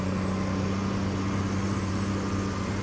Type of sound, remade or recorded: recorded